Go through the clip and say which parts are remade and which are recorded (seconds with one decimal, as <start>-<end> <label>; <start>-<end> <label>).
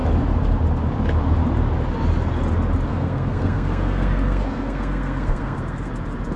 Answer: 0.0-2.9 recorded; 2.9-5.9 remade; 5.9-6.4 recorded